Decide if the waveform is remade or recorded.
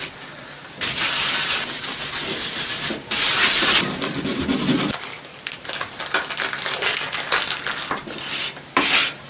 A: recorded